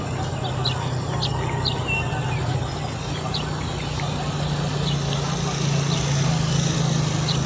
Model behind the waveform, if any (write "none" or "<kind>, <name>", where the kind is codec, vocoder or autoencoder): none